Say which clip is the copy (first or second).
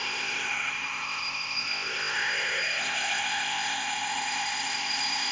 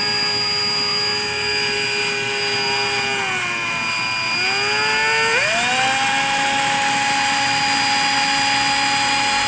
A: first